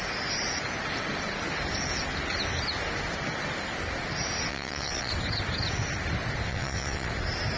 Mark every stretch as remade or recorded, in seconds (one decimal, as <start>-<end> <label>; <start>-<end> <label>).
0.0-4.5 recorded; 4.5-5.1 remade; 5.1-6.5 recorded; 6.5-7.1 remade; 7.1-7.6 recorded